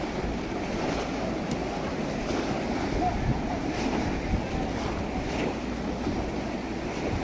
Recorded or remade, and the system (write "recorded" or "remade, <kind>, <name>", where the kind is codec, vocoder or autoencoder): recorded